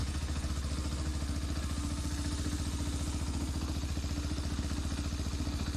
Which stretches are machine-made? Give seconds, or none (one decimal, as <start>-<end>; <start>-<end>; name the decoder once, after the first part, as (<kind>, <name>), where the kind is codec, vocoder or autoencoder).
0.0-0.5 (vocoder, Vocos)